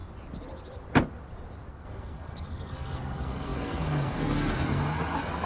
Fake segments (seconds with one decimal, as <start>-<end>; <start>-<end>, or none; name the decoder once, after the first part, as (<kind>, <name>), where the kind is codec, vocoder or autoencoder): 1.7-5.5 (codec, SNAC)